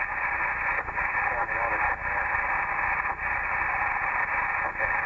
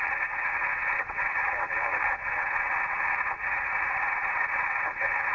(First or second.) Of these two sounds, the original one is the first